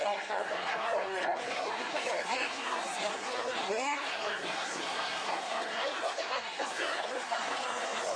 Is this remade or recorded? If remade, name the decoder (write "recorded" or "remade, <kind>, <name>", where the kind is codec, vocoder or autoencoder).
remade, codec, SNAC